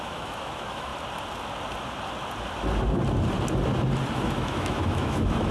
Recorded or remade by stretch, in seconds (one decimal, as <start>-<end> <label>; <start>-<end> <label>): 0.0-0.9 remade; 0.9-4.1 recorded; 4.1-5.5 remade